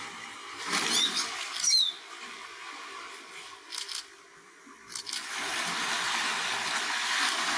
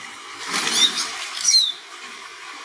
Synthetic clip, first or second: second